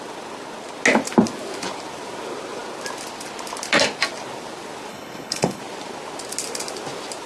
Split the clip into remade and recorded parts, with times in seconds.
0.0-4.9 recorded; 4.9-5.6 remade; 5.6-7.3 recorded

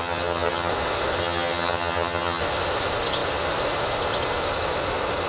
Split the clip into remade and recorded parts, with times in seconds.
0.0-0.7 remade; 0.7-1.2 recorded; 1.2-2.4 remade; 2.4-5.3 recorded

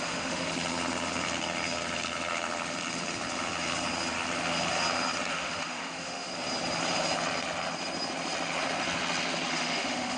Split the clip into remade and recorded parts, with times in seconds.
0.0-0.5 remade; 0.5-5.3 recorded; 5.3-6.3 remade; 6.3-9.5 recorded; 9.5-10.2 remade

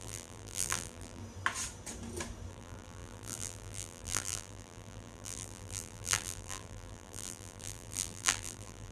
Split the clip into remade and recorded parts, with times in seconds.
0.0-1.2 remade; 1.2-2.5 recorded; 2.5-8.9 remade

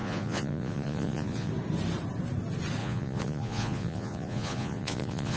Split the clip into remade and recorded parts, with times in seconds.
0.0-1.5 remade; 1.5-2.8 recorded; 2.8-5.4 remade

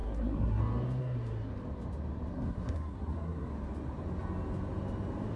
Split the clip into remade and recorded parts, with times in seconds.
0.0-0.6 remade; 0.6-1.0 recorded; 1.0-1.5 remade; 1.5-2.3 recorded; 2.3-3.5 remade; 3.5-5.4 recorded

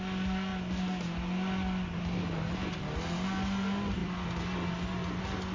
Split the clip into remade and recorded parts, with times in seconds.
0.0-5.5 recorded

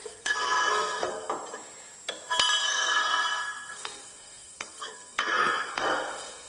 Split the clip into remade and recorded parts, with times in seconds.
0.0-1.3 remade; 1.3-2.6 recorded; 2.6-6.5 remade